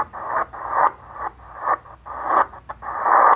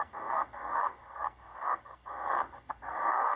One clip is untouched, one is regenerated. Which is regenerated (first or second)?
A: second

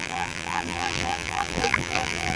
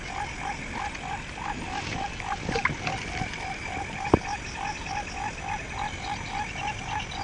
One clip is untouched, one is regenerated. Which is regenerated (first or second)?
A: first